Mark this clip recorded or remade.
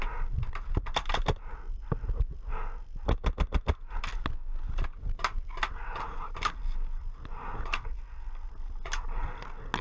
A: recorded